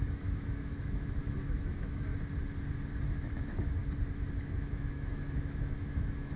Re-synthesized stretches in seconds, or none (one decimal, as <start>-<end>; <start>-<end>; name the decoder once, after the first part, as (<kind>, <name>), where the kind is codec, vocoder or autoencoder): 0.0-2.1 (autoencoder, DAC-VAE); 3.1-3.8; 4.4-6.4